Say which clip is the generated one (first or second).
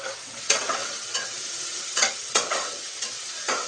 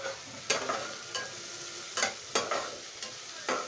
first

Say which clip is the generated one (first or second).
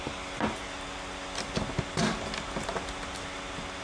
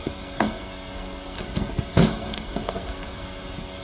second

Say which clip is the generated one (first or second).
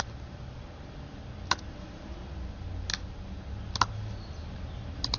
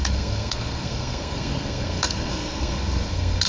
second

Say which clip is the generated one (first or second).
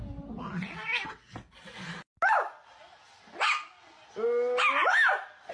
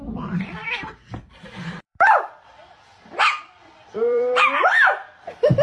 second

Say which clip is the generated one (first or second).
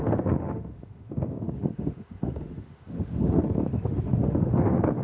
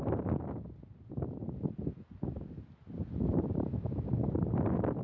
first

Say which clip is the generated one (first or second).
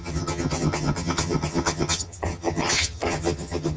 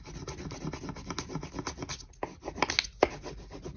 first